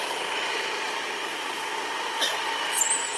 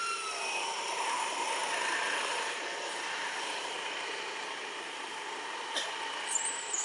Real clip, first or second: first